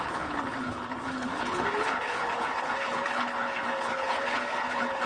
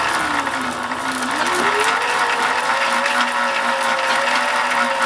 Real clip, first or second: second